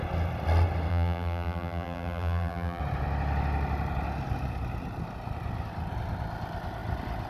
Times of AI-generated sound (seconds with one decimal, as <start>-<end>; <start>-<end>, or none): 0.9-2.8